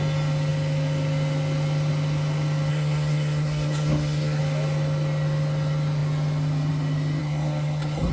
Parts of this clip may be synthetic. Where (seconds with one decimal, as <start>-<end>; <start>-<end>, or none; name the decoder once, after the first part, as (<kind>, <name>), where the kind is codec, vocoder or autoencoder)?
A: 2.7-4.4 (codec, SNAC); 7.2-8.1